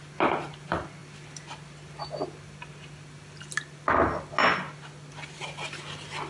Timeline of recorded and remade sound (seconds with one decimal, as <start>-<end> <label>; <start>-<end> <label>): 0.0-6.3 recorded